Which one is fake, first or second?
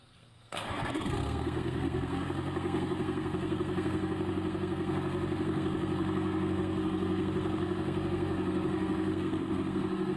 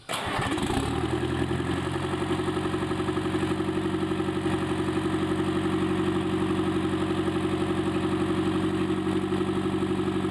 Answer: first